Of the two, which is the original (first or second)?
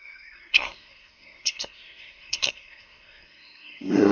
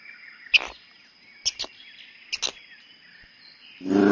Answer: second